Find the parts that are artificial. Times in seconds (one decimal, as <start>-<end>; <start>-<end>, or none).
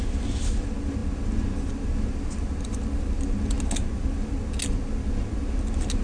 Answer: none